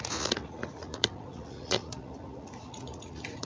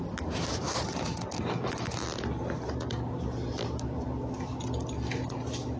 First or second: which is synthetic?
first